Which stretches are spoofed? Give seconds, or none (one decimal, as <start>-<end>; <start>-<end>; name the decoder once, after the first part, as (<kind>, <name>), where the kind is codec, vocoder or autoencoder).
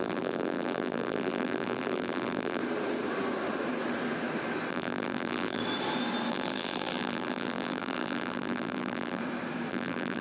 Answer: 0.0-2.6 (vocoder, BigVGAN v2); 4.7-5.6; 6.3-9.2; 9.7-10.2